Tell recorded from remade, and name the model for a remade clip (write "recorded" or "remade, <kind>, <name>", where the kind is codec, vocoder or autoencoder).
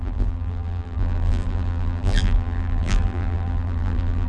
remade, vocoder, BigVGAN v2